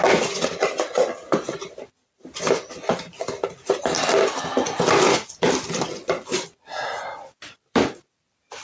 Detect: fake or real real